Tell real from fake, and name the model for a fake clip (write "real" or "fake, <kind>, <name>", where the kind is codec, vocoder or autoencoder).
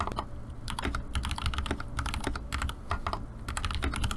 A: real